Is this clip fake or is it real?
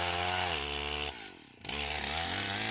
real